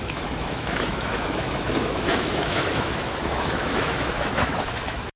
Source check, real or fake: fake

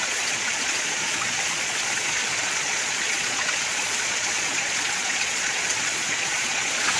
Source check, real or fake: fake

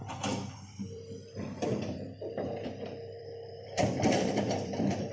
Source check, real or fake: fake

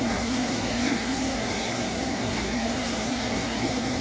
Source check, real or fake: fake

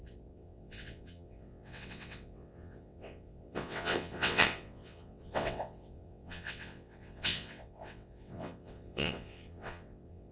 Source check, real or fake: fake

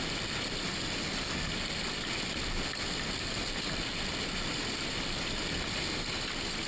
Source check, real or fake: real